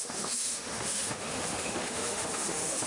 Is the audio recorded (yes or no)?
no